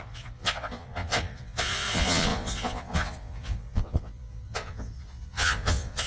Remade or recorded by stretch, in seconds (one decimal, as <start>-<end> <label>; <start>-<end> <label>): 0.0-6.1 remade